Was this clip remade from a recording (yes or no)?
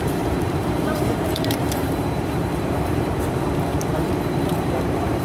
yes